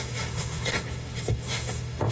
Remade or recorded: remade